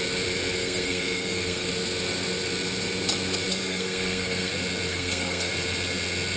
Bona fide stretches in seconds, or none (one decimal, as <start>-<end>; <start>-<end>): 0.0-0.6; 1.7-3.5; 4.5-4.9; 5.5-6.4